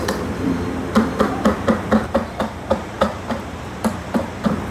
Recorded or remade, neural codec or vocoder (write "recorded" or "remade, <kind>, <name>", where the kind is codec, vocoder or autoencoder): remade, vocoder, BigVGAN v2